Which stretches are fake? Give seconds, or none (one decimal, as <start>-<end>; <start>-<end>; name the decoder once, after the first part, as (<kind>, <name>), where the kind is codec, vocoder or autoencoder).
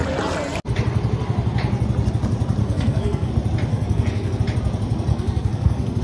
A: 2.6-3.3 (codec, SNAC); 3.7-4.4; 5.1-6.0